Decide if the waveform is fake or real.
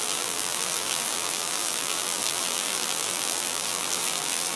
fake